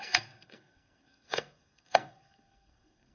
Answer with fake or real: fake